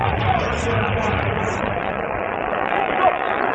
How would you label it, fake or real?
fake